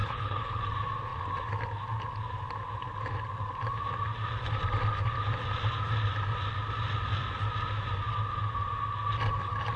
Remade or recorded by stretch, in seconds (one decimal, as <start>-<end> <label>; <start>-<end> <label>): 0.0-0.6 remade; 0.6-9.8 recorded